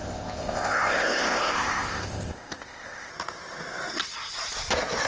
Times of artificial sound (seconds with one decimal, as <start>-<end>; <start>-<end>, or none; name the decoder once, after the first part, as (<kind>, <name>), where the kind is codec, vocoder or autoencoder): 0.0-3.1 (codec, ZipCodec)